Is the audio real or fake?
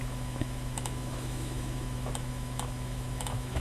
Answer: fake